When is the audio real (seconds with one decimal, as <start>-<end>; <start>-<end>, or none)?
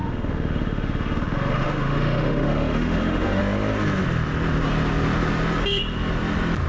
3.4-6.7